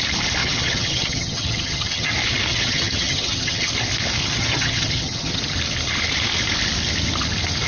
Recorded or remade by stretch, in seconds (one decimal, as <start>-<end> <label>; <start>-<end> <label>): 0.0-0.4 recorded; 0.4-2.1 remade; 2.1-2.5 recorded; 2.5-3.7 remade; 3.7-4.2 recorded; 4.2-5.4 remade; 5.4-7.7 recorded